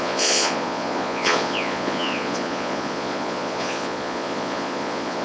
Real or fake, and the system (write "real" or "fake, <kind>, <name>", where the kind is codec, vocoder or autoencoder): fake, vocoder, Vocos